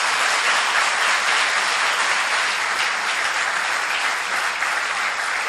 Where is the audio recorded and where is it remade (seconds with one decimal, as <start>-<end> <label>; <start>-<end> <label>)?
0.0-5.5 recorded